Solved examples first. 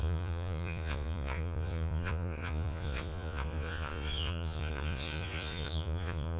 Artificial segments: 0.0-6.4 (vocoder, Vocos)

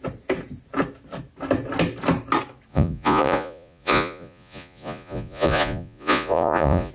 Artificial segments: 2.7-6.9 (vocoder, Vocos)

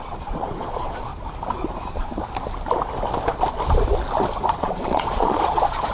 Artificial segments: 0.0-1.1 (vocoder, Vocos); 4.6-5.9

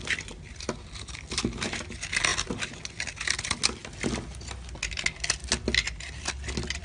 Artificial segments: none

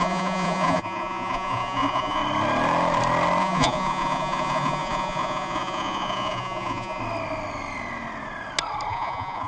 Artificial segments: 0.0-2.2 (vocoder, Vocos); 3.4-7.0; 8.9-9.5

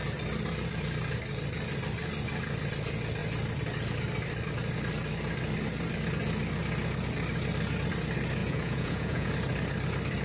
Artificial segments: 8.4-9.3 (vocoder, Vocos)

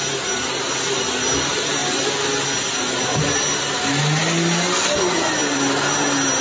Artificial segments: none

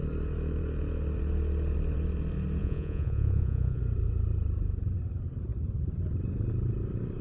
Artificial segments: 2.6-3.8 (vocoder, Vocos)